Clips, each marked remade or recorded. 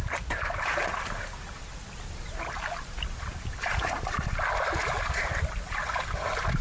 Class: recorded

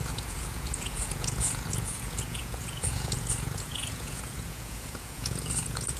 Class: remade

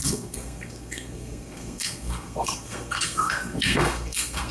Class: remade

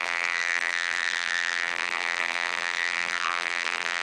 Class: remade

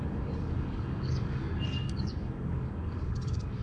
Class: remade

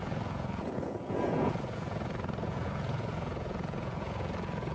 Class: remade